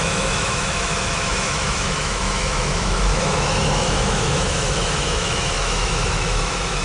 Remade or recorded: remade